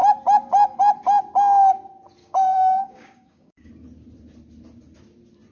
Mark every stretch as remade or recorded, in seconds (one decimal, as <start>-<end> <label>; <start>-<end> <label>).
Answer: 0.0-2.2 recorded; 2.2-3.7 remade; 3.7-5.5 recorded